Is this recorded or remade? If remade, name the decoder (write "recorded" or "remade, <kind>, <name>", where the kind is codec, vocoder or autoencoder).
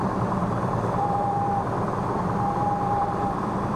remade, vocoder, BigVGAN v2